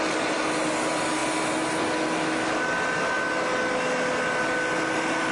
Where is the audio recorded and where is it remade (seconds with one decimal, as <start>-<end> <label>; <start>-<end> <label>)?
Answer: 0.0-5.3 recorded